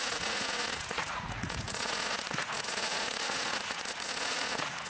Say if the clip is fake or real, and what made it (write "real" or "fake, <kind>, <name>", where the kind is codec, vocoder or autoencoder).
fake, vocoder, Vocos